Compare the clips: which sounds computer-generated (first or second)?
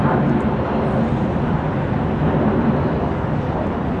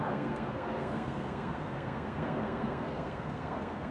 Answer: second